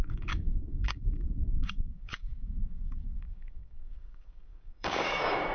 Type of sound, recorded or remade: remade